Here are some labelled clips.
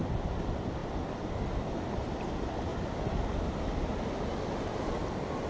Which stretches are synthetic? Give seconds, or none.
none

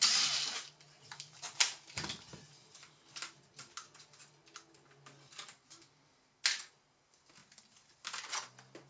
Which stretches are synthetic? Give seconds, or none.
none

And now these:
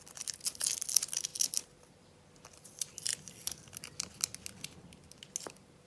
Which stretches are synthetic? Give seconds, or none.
none

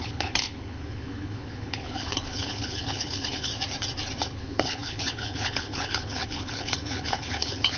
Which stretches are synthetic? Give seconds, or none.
0.0-3.5 (codec, HILCodec); 4.3-7.8